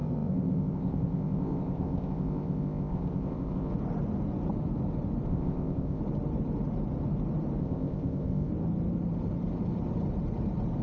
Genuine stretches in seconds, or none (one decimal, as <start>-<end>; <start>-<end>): 3.7-5.3; 6.0-7.6; 8.5-10.8

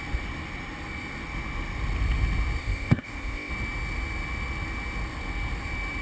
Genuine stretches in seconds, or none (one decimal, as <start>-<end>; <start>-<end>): 0.0-2.6; 3.5-6.0